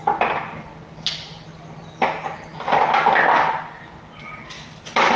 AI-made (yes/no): no